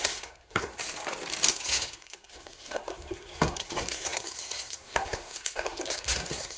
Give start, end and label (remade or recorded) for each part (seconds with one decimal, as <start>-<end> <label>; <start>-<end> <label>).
0.0-0.8 remade; 0.8-1.5 recorded; 1.5-6.6 remade